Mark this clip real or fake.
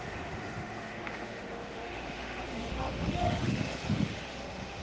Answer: fake